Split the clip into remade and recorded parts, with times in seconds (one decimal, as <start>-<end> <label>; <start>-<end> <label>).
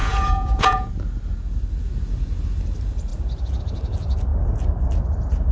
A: 0.0-0.9 remade; 0.9-5.5 recorded